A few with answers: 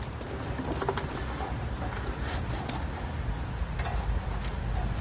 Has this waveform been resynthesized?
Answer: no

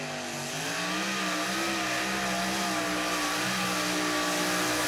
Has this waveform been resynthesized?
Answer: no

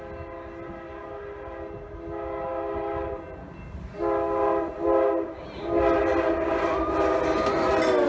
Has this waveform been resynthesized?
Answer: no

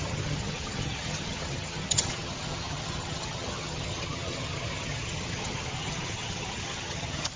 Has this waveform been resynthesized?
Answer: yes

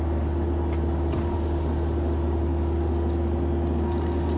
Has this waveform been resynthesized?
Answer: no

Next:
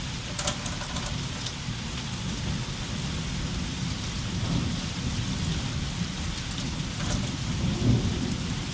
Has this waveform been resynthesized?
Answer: no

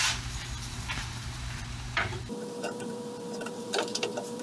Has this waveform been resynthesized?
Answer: yes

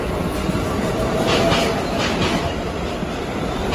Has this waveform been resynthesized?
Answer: no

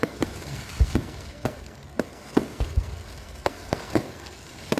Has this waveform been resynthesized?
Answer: yes